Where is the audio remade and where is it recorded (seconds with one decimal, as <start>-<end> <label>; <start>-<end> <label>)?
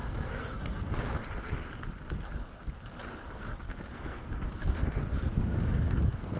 0.0-1.2 remade; 1.2-3.3 recorded; 3.3-6.4 remade